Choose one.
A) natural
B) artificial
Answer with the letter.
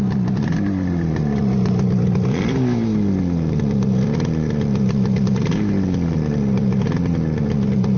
A